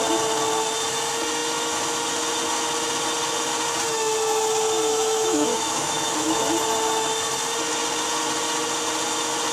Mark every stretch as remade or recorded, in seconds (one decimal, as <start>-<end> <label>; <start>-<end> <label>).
0.0-4.9 recorded; 4.9-6.4 remade; 6.4-9.5 recorded